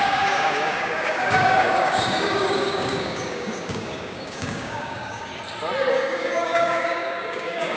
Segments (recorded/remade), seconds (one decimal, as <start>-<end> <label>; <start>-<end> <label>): 0.0-5.3 remade; 5.3-5.9 recorded; 5.9-7.8 remade

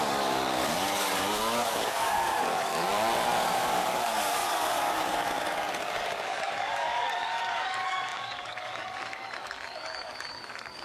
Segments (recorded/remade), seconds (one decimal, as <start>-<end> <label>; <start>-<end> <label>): 0.0-2.9 remade; 2.9-3.5 recorded; 3.5-10.8 remade

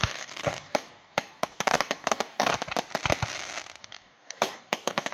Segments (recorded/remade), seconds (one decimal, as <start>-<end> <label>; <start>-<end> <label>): 0.0-2.5 remade; 2.5-3.8 recorded; 3.8-5.1 remade

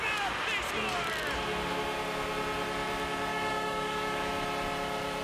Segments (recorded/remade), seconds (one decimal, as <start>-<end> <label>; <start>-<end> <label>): 0.0-3.3 recorded; 3.3-4.3 remade; 4.3-5.2 recorded